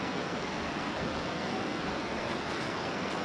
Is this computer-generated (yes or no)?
yes